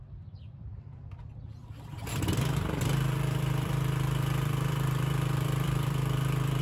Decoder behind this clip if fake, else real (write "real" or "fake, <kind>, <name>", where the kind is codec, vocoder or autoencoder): fake, vocoder, BigVGAN v2